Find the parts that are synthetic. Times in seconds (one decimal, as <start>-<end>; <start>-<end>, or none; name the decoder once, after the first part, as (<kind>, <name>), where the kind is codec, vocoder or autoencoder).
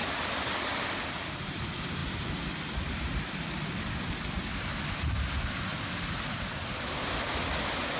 none